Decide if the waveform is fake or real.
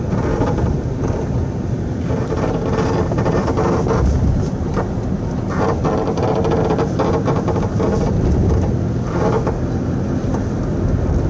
real